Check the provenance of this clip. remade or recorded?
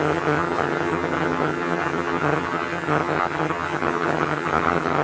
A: remade